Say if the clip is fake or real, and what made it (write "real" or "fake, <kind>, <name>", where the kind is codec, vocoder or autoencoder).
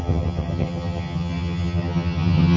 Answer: fake, vocoder, HiFi-GAN